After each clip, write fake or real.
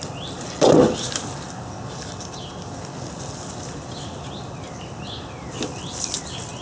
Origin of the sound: real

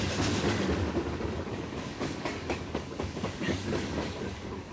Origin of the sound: fake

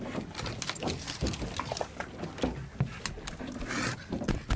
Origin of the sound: real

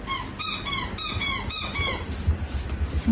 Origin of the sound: real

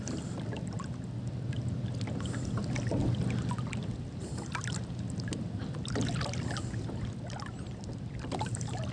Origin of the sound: real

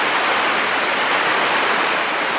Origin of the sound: real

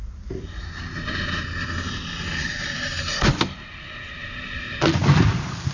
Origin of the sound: real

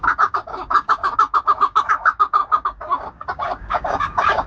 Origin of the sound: fake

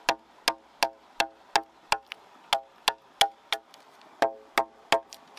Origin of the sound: real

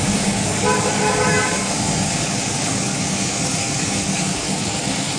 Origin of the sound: fake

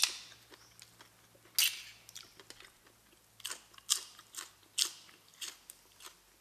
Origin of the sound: real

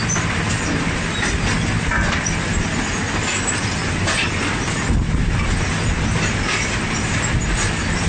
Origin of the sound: real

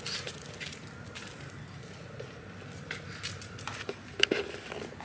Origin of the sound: real